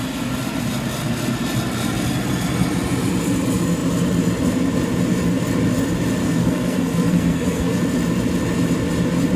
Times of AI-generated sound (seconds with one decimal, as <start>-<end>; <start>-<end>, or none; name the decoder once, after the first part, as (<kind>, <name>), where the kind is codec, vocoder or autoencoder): 6.2-7.8 (codec, SNAC)